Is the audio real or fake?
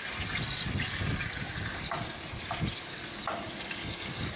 real